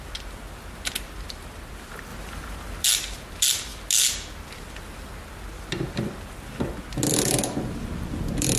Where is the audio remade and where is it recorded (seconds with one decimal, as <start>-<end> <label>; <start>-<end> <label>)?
0.0-8.6 recorded